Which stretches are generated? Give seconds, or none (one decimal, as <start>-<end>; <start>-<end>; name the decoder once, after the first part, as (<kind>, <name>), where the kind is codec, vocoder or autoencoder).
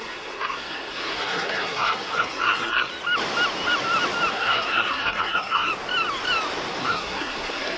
0.0-2.9 (codec, SNAC); 4.3-5.7; 6.8-7.8